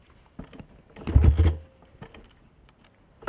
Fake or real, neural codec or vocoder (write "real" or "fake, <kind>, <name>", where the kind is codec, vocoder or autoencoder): real